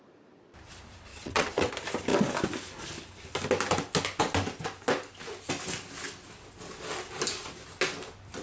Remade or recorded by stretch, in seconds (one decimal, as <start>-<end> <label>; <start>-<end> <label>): 0.0-1.1 recorded; 1.1-1.7 remade; 1.7-8.4 recorded